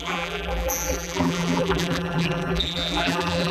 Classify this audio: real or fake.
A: fake